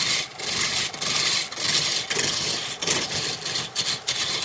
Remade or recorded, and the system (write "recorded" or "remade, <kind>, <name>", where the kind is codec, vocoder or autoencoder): recorded